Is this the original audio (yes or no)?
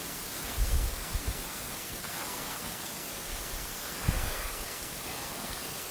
no